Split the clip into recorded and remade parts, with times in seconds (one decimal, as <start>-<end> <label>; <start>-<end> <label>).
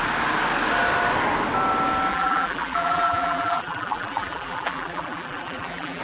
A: 0.0-2.1 recorded; 2.1-6.0 remade